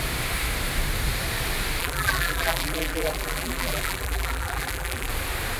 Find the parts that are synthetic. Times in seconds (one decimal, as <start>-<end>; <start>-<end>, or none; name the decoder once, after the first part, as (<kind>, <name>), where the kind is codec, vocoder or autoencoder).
1.8-5.1 (vocoder, BigVGAN v2)